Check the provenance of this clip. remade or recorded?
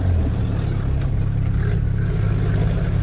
recorded